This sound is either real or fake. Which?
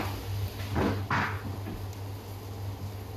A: real